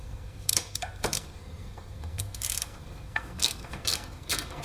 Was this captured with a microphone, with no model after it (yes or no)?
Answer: no